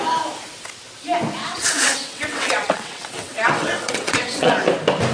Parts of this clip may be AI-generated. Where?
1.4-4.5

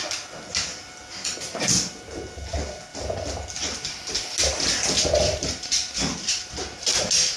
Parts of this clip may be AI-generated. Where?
none

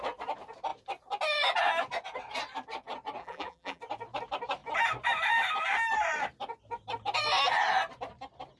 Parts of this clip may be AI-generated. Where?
3.2-3.8

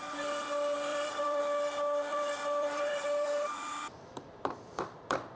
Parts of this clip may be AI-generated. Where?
0.9-1.4; 2.1-5.4

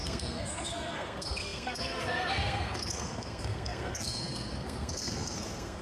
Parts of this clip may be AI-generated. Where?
0.0-5.8

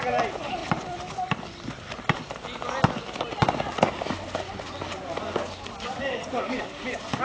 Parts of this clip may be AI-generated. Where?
5.2-6.8

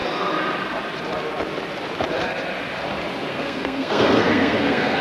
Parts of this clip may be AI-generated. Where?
3.3-5.0